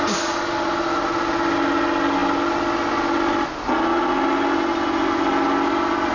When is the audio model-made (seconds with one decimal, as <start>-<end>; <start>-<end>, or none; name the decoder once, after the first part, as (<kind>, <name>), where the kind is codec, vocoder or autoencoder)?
none